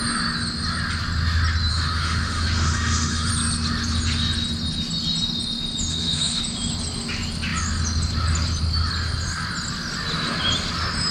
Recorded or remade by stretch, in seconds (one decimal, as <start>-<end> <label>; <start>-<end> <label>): 0.0-1.7 recorded; 1.7-3.3 remade; 3.3-5.9 recorded; 5.9-6.4 remade; 6.4-11.1 recorded